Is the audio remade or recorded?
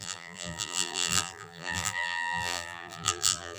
remade